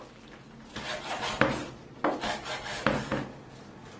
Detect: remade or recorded recorded